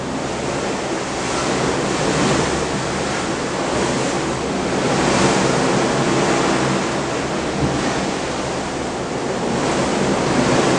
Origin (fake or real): real